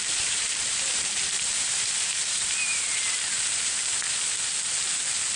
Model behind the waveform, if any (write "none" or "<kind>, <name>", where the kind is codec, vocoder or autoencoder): vocoder, BigVGAN v2